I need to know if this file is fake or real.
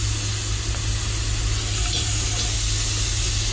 real